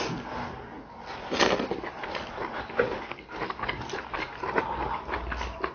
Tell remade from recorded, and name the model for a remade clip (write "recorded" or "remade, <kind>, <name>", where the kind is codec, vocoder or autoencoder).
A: recorded